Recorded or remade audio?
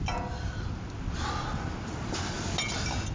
recorded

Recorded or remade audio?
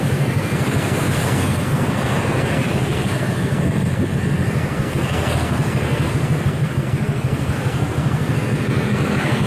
remade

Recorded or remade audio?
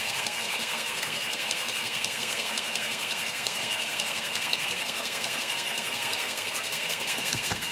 remade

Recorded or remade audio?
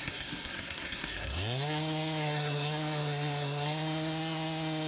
remade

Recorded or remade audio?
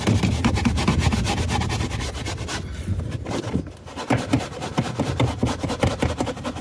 recorded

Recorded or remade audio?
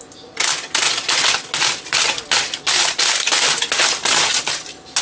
recorded